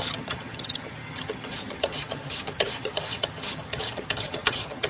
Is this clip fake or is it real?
fake